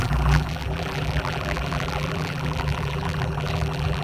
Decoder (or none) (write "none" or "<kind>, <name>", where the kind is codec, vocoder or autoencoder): vocoder, BigVGAN v2